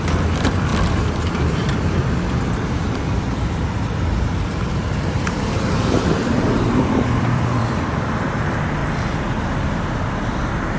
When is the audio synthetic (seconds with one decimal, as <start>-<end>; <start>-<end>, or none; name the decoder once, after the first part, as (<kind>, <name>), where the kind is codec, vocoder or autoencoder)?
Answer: 0.0-8.8 (vocoder, BigVGAN v2); 10.1-10.8